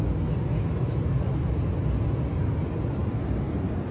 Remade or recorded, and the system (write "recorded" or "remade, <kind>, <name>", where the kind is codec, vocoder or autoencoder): recorded